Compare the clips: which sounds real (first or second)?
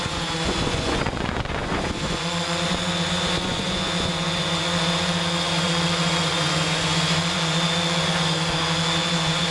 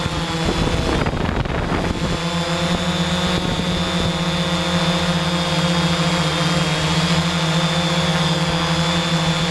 second